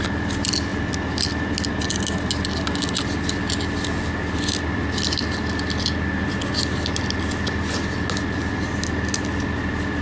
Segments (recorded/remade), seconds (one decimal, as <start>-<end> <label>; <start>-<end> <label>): 0.0-10.0 recorded